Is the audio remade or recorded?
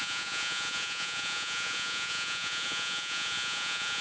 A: remade